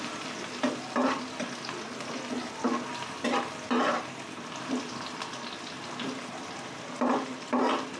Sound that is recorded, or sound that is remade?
recorded